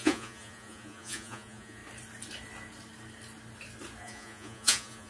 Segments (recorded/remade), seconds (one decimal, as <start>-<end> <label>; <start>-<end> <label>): 0.0-1.8 remade; 1.8-4.0 recorded; 4.0-5.1 remade